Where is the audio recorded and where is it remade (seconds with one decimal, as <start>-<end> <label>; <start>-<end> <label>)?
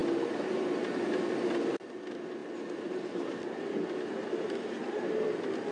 0.0-5.7 recorded